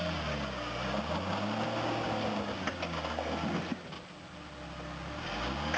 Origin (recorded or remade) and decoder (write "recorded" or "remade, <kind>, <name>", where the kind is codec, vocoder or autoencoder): recorded